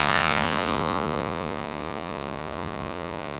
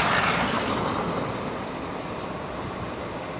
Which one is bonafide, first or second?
second